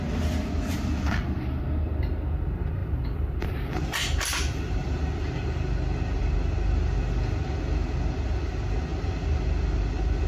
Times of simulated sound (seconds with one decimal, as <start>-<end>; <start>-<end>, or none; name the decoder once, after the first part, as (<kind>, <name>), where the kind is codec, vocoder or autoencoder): 2.8-5.0 (vocoder, BigVGAN v2); 8.9-9.4